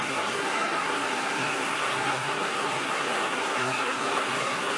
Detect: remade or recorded remade